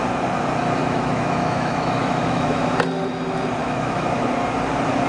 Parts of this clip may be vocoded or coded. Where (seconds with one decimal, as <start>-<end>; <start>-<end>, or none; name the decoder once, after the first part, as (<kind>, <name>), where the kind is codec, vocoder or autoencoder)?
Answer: 0.8-2.6 (autoencoder, DAC-VAE); 3.6-4.3

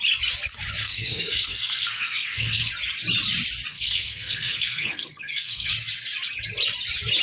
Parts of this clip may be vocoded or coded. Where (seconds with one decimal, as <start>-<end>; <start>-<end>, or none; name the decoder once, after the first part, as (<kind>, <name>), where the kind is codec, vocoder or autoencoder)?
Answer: 0.8-2.7 (codec, SNAC); 3.7-5.7